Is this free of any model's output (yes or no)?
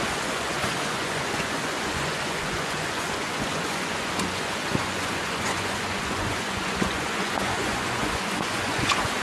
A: no